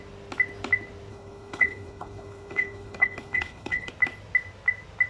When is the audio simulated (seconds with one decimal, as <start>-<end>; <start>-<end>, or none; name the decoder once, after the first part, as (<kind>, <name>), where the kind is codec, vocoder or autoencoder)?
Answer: 1.1-3.9 (codec, HILCodec)